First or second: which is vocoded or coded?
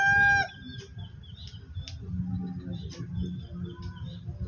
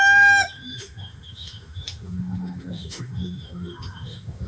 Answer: second